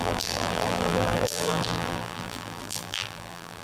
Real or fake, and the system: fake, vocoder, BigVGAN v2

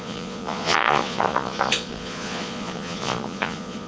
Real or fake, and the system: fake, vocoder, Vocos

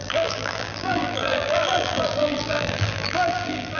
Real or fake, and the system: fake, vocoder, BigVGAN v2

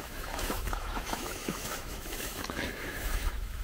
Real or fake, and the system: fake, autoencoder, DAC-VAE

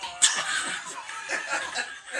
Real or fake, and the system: fake, vocoder, BigVGAN v2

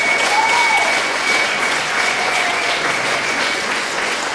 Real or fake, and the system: fake, vocoder, Vocos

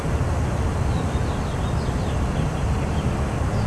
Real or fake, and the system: real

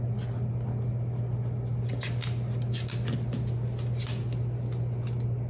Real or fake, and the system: real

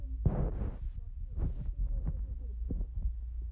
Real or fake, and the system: real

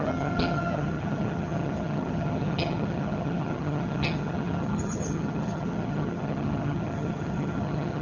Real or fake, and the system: fake, vocoder, HiFi-GAN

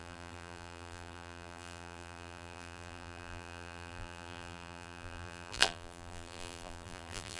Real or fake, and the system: fake, vocoder, BigVGAN v2